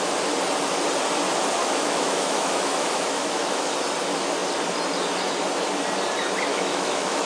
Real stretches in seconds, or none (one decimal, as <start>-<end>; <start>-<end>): 0.0-1.6; 3.7-6.5